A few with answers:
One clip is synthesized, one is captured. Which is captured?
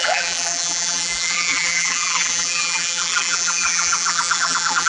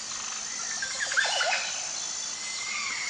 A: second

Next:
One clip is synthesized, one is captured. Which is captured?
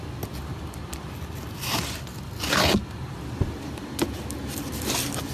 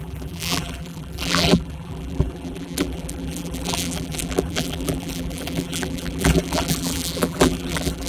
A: first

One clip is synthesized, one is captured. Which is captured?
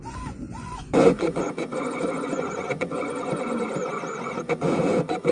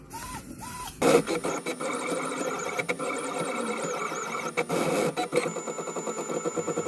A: second